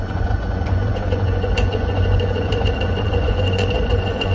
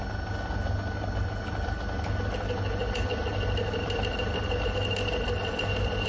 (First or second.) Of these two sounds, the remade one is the first